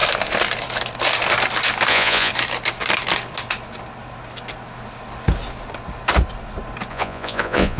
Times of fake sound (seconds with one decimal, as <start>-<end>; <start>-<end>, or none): 1.9-2.3; 6.9-7.8